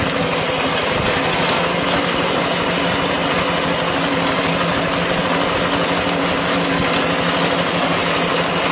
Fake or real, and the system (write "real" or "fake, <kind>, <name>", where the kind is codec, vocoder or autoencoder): real